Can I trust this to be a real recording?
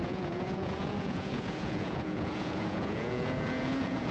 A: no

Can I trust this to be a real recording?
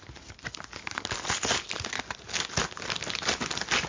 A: yes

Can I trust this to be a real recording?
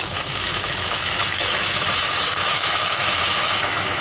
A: no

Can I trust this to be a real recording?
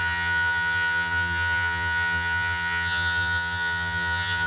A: no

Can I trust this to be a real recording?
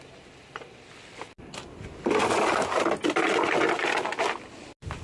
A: yes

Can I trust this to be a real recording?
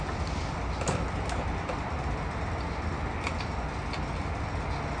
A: yes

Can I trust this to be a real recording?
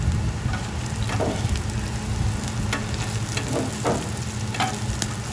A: yes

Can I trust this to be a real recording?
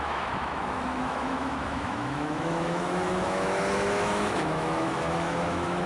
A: no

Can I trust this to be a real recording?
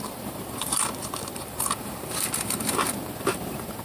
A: no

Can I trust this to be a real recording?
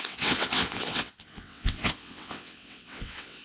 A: no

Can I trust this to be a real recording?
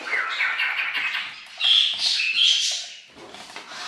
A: yes